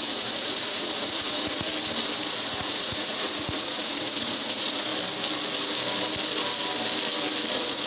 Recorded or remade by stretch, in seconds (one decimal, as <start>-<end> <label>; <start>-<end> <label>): 0.0-1.7 remade; 1.7-2.5 recorded; 2.5-4.9 remade; 4.9-7.5 recorded; 7.5-7.9 remade